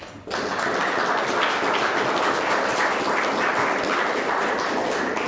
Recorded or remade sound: recorded